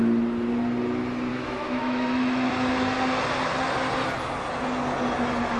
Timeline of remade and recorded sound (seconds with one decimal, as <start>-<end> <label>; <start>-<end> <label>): 0.0-1.3 recorded; 1.3-2.5 remade; 2.5-5.6 recorded